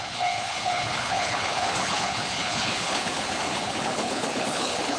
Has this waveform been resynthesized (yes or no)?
yes